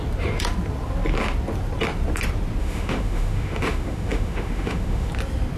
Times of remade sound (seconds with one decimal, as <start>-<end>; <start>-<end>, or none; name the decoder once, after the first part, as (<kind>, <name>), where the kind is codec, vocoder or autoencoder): 2.6-5.1 (autoencoder, DAC-VAE)